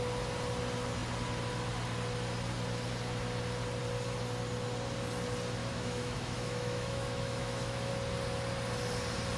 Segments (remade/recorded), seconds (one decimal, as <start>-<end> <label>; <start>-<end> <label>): 0.0-5.6 recorded; 5.6-7.9 remade; 7.9-9.4 recorded